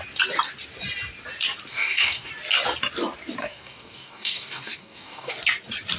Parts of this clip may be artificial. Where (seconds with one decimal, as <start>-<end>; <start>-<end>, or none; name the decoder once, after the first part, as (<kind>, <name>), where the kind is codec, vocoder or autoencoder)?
1.7-2.3 (codec, DAC); 3.4-5.3